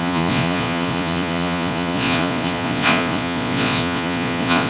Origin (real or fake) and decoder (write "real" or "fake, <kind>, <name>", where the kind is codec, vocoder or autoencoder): fake, vocoder, Vocos